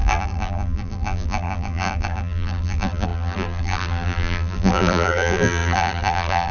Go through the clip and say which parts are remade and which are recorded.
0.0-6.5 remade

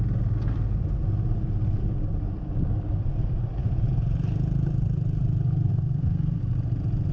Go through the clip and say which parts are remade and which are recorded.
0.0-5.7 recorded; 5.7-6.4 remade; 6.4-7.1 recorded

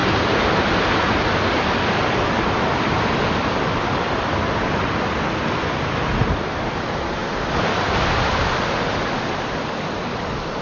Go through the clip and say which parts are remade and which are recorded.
0.0-10.6 recorded

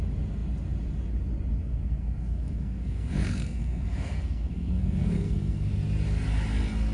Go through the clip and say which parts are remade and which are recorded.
0.0-1.6 recorded; 1.6-5.7 remade; 5.7-6.9 recorded

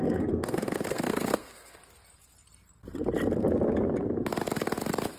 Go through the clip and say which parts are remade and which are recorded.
0.0-1.8 remade; 1.8-5.2 recorded

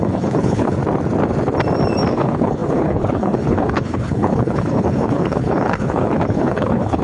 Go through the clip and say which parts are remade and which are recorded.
0.0-0.8 remade; 0.8-2.1 recorded; 2.1-7.0 remade

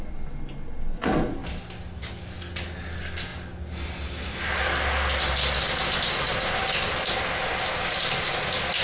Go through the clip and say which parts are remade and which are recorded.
0.0-8.8 recorded

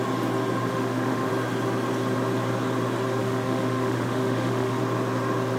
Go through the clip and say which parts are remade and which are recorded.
0.0-0.7 recorded; 0.7-1.3 remade; 1.3-3.2 recorded; 3.2-4.8 remade; 4.8-5.6 recorded